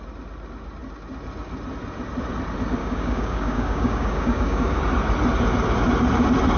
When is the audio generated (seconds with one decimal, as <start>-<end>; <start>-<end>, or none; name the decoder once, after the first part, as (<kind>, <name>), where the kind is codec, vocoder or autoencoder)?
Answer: 2.8-4.8 (codec, DAC)